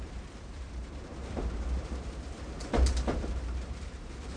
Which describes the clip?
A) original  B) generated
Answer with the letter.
B